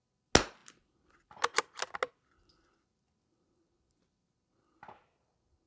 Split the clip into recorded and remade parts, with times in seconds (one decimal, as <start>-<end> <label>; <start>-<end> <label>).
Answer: 0.0-5.7 recorded